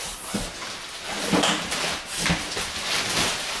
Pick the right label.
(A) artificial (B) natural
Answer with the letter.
B